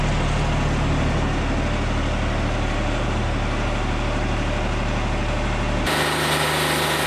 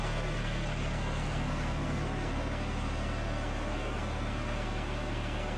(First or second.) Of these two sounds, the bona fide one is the first